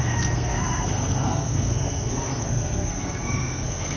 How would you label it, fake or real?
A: fake